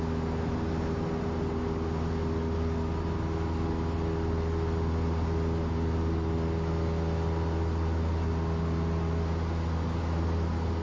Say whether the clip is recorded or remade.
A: recorded